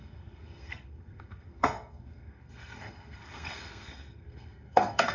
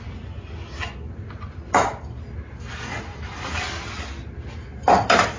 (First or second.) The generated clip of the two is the first